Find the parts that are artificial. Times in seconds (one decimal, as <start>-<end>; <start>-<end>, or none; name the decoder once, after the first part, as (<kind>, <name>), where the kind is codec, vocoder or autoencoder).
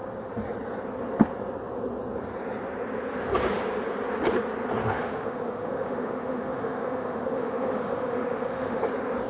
4.8-8.8 (autoencoder, DAC-VAE)